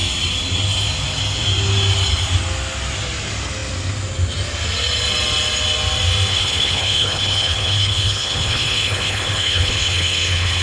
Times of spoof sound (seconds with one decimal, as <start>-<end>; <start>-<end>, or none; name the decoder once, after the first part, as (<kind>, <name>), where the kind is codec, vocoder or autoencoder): 6.3-10.6 (codec, HILCodec)